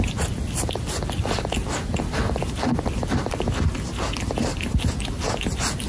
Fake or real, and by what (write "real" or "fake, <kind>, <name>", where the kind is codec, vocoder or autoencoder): real